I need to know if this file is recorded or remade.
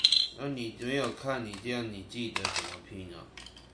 recorded